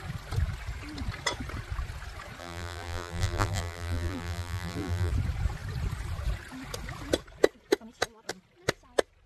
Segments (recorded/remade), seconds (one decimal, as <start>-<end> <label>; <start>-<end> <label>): 0.0-2.4 recorded; 2.4-5.1 remade; 5.1-9.3 recorded